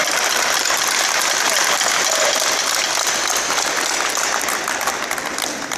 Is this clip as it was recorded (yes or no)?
yes